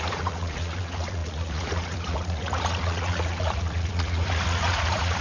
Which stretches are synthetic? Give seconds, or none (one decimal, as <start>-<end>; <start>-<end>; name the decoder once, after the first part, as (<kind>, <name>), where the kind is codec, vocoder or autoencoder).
0.0-5.2 (vocoder, Vocos)